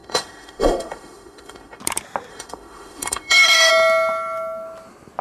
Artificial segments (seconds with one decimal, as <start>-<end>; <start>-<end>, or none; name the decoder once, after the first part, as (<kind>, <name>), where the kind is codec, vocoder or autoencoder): 0.0-1.8 (autoencoder, DAC-VAE); 2.3-3.7